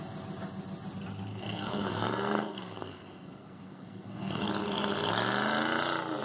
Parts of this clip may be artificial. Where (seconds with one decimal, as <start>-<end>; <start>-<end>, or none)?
1.3-4.5